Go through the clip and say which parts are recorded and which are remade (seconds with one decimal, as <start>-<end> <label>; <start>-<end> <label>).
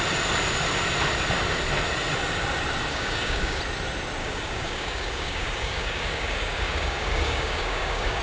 0.0-2.9 recorded; 2.9-3.6 remade; 3.6-4.2 recorded; 4.2-8.2 remade